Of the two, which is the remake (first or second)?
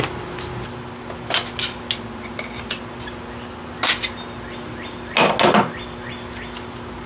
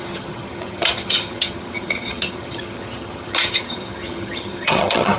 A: second